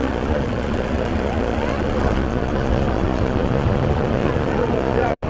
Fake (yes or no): yes